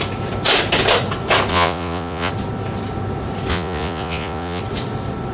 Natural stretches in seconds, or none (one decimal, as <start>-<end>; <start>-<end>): 0.0-1.5; 2.3-3.5; 4.6-5.3